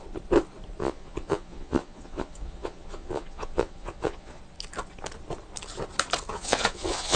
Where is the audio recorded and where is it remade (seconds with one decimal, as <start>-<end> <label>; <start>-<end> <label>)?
0.0-0.8 recorded; 0.8-4.4 remade; 4.4-6.3 recorded; 6.3-7.2 remade